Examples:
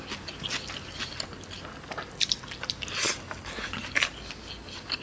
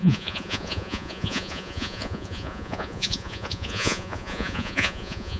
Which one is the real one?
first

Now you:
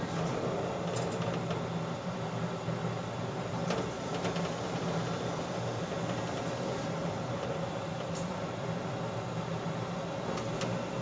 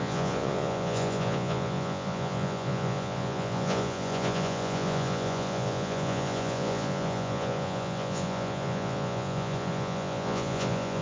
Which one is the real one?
first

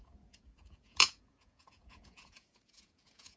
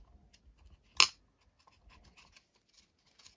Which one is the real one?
second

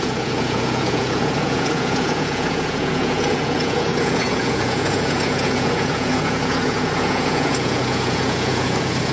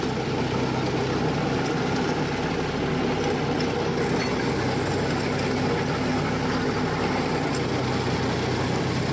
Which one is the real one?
second